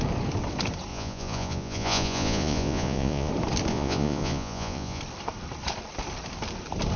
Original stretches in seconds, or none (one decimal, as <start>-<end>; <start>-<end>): 0.0-0.9; 3.3-3.7; 5.0-7.0